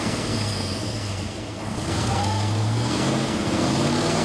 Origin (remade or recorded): remade